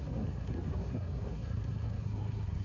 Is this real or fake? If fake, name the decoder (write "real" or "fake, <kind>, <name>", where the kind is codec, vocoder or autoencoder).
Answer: fake, codec, SNAC